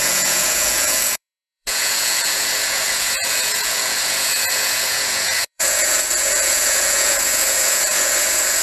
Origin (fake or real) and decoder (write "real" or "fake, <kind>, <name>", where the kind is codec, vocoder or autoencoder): fake, vocoder, Vocos